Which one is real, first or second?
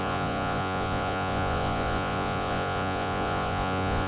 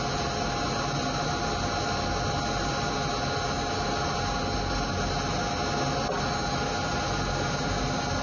second